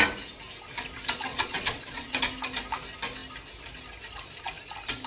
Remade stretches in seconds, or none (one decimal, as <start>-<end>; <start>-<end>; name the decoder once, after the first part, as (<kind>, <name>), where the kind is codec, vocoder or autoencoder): 1.3-2.2 (vocoder, Vocos)